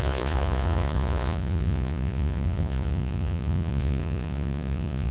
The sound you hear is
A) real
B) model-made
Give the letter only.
B